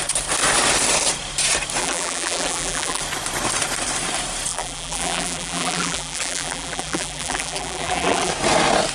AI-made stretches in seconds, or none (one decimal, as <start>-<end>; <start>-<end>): 1.8-3.0; 4.5-8.3